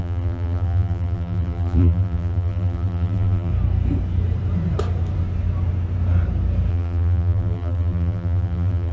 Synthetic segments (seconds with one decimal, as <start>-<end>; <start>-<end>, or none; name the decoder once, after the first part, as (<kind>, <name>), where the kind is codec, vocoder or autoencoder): 0.0-3.5 (vocoder, BigVGAN v2); 6.7-8.9